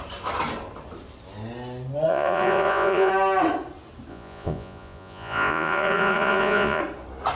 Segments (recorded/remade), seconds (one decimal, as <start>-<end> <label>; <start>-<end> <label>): 0.0-2.1 recorded; 2.1-3.1 remade; 3.1-4.1 recorded; 4.1-6.8 remade; 6.8-7.4 recorded